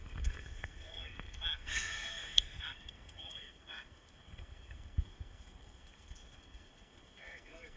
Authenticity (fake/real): fake